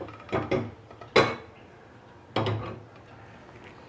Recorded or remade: recorded